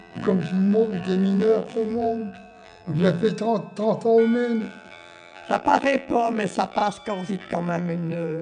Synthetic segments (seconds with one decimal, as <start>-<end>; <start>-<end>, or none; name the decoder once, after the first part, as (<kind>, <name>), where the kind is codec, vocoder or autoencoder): 0.0-3.3 (vocoder, BigVGAN v2); 4.6-6.8; 7.3-8.4